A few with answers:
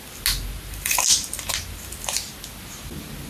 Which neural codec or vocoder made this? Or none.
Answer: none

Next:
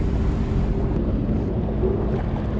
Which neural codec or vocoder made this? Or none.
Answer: none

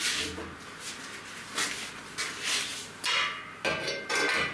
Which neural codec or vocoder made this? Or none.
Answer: none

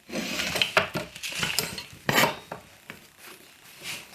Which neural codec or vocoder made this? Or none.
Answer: none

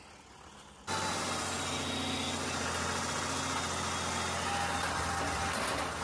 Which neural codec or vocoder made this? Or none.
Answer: none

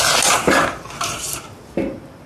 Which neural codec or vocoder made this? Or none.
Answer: none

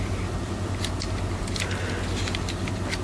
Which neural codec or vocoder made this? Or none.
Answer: none